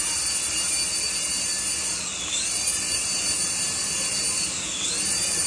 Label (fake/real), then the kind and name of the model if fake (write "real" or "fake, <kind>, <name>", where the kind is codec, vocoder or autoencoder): real